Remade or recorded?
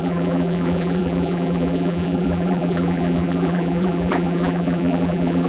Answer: remade